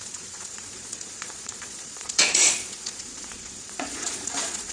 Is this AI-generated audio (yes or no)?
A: yes